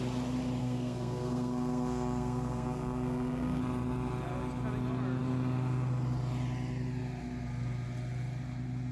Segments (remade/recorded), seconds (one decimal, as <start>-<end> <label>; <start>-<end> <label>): 0.0-0.6 recorded; 0.6-3.6 remade; 3.6-8.9 recorded